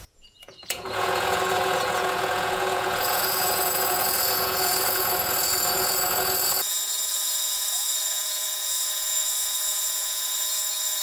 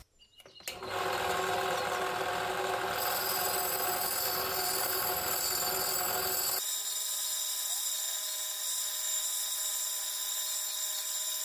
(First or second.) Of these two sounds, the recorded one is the second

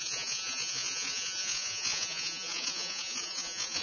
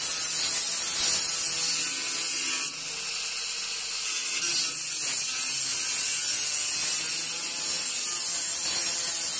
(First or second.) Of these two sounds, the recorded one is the second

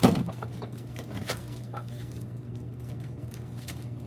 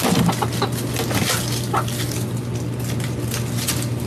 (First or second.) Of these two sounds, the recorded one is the second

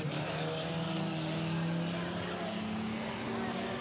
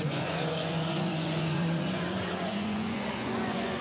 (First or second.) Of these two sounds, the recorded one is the first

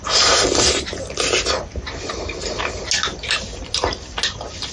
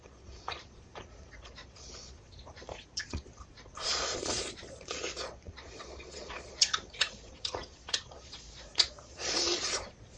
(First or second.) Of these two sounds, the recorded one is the first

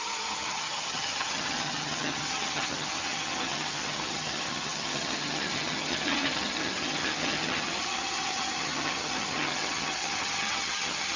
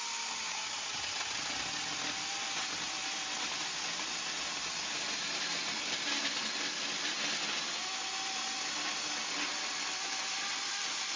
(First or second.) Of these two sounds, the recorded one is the second